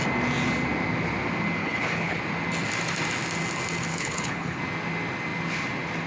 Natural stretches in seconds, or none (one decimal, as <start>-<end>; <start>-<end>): 0.0-1.6; 2.2-3.9; 4.6-6.1